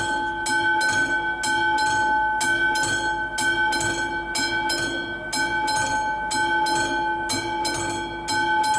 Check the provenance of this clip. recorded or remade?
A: recorded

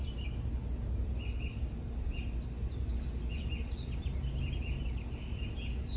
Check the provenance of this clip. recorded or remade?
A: recorded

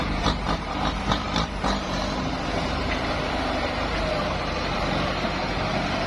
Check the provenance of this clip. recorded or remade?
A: remade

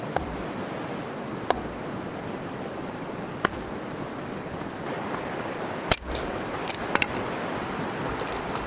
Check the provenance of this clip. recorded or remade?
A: remade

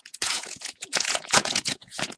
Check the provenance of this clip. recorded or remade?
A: remade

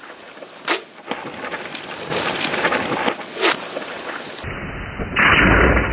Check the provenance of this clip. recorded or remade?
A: recorded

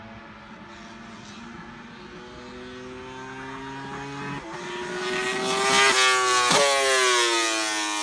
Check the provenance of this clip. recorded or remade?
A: recorded